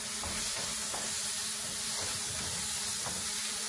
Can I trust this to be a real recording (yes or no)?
yes